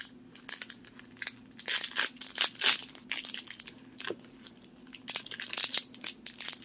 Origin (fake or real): real